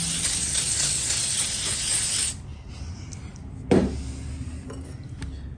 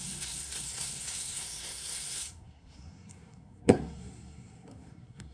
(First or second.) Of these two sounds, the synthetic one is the second